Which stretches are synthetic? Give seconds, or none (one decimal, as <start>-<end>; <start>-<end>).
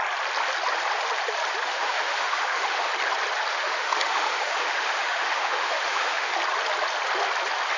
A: 1.7-2.9; 3.5-6.3